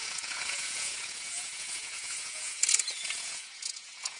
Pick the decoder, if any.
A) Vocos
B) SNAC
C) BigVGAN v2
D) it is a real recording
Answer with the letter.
A